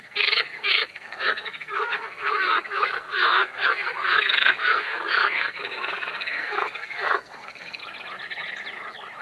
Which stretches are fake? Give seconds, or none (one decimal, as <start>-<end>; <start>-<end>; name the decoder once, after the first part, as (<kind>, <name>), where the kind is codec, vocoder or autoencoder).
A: 0.0-7.8 (codec, SNAC)